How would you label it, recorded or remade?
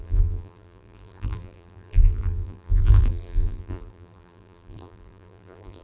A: remade